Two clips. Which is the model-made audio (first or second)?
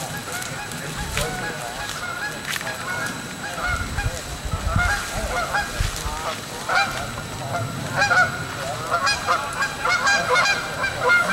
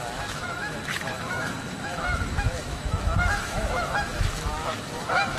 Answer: second